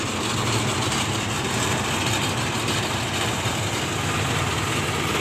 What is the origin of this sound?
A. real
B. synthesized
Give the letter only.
A